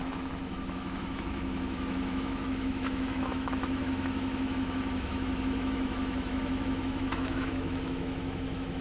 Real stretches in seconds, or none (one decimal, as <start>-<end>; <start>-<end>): none